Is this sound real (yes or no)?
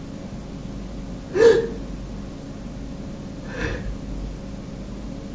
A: yes